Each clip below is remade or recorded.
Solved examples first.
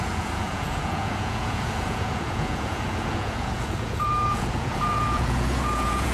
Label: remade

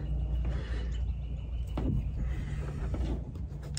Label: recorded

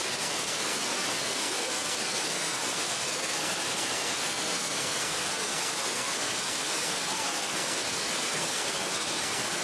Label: remade